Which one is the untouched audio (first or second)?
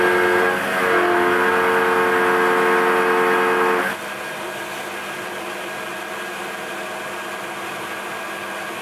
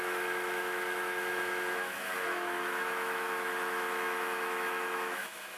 first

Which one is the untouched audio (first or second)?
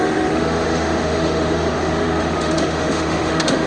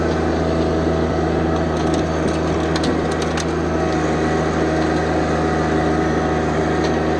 second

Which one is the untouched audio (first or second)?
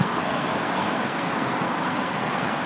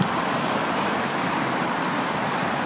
second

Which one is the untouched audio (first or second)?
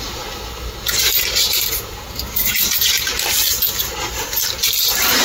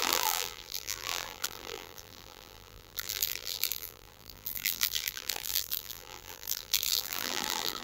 first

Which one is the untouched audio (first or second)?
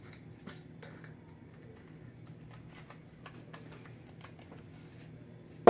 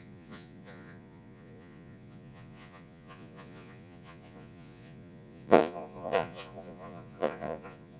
first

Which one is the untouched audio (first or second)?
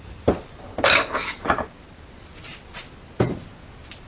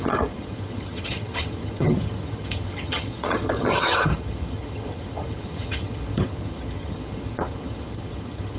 first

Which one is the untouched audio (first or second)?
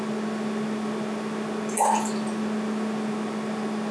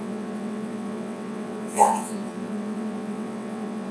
first